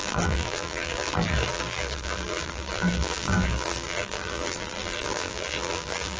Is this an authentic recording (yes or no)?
no